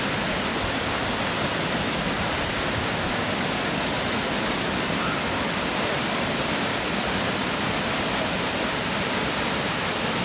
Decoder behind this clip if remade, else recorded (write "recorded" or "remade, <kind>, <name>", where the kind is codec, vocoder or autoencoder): recorded